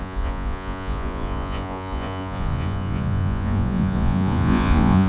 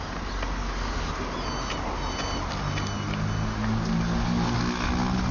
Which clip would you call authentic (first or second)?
second